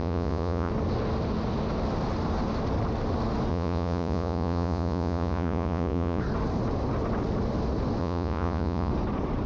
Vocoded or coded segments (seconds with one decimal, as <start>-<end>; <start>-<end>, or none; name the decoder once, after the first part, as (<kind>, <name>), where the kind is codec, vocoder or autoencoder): 0.0-0.7 (vocoder, Vocos); 3.5-6.2; 8.0-8.9